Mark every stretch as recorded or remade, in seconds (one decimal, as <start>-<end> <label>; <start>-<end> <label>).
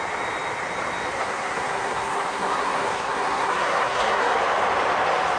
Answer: 0.0-1.2 recorded; 1.2-4.4 remade; 4.4-5.4 recorded